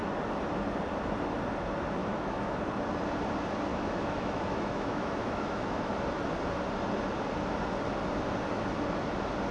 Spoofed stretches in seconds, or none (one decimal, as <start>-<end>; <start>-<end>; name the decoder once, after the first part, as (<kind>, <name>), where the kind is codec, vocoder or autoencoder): 2.0-2.6 (autoencoder, DAC-VAE); 3.7-5.9